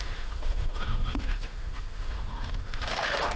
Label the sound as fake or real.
fake